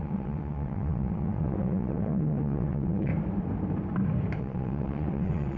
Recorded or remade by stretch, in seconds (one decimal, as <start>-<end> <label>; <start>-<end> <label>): 0.0-3.1 remade; 3.1-4.4 recorded; 4.4-5.6 remade